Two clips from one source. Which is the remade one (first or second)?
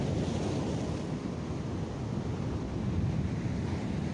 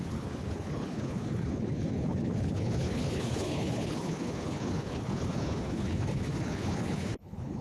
second